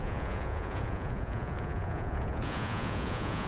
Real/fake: fake